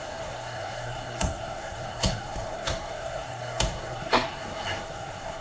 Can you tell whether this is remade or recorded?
remade